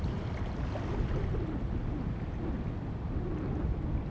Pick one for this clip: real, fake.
real